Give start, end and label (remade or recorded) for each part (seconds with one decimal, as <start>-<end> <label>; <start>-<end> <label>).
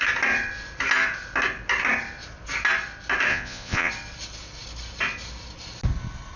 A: 0.0-3.3 recorded; 3.3-3.9 remade; 3.9-6.4 recorded